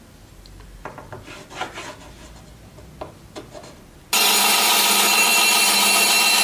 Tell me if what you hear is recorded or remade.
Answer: recorded